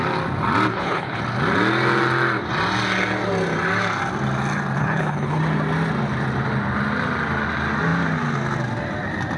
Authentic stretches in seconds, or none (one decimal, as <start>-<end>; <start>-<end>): 0.0-0.7; 1.2-4.8; 5.4-9.4